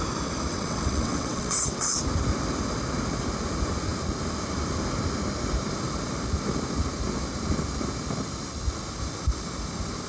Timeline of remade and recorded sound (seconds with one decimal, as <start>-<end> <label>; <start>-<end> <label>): 0.0-0.5 recorded; 0.5-1.9 remade; 1.9-10.1 recorded

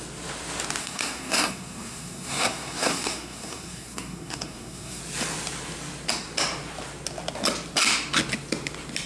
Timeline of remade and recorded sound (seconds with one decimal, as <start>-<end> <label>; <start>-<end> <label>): 0.0-0.8 recorded; 0.8-5.0 remade; 5.0-9.1 recorded